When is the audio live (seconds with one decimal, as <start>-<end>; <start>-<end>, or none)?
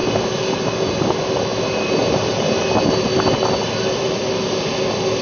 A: 0.0-1.5; 2.8-5.2